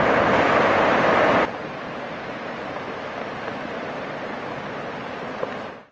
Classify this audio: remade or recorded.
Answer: recorded